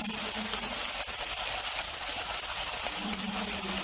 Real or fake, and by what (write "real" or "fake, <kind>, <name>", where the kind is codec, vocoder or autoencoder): real